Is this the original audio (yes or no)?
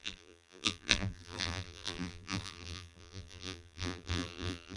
no